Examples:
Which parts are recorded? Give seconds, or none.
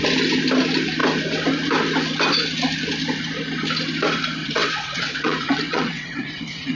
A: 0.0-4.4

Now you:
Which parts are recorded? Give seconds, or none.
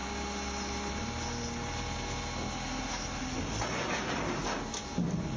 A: 0.0-5.4